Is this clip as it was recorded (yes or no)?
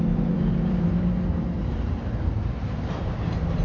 no